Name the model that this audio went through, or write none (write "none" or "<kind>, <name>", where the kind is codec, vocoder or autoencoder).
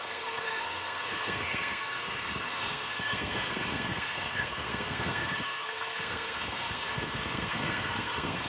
codec, SNAC